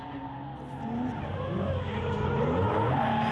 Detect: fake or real real